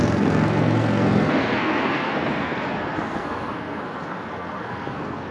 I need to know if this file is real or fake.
fake